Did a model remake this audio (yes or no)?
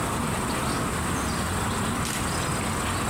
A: no